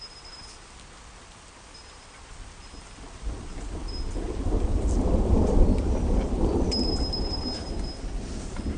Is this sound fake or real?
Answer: real